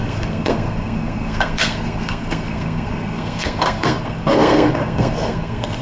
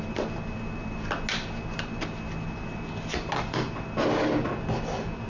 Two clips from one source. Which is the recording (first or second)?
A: second